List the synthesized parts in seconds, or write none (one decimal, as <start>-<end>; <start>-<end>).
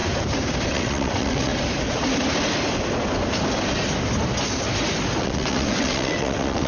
0.7-1.5; 5.2-6.7